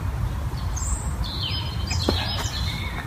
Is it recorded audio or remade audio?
recorded